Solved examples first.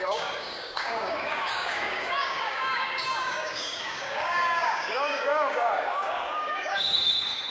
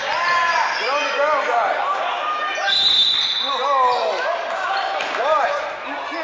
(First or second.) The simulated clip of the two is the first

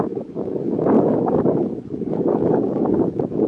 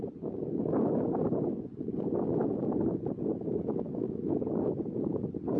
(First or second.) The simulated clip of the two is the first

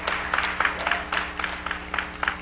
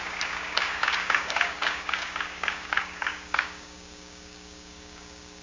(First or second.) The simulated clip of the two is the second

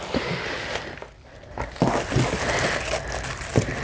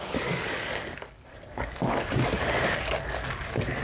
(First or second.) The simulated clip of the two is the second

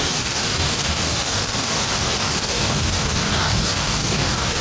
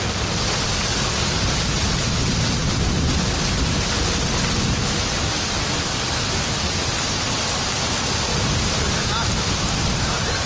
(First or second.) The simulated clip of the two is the first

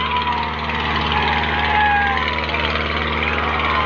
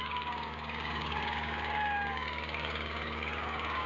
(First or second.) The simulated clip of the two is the second